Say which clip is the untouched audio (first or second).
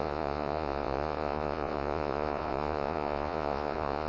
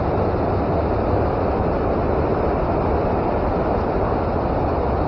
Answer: second